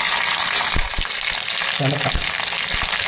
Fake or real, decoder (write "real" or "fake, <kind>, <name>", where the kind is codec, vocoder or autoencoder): real